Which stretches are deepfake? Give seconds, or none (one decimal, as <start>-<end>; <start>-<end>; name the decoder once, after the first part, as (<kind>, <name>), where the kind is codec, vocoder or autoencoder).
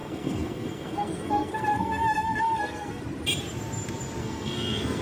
0.0-3.0 (codec, SNAC); 4.2-5.0